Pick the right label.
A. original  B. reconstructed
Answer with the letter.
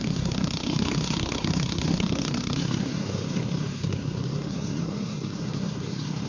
B